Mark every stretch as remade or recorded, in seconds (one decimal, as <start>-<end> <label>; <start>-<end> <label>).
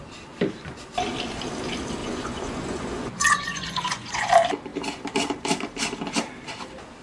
0.0-2.0 recorded; 2.0-4.3 remade; 4.3-7.0 recorded